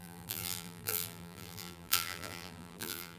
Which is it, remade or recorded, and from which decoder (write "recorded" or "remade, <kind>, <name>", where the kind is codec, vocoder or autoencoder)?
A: remade, vocoder, BigVGAN v2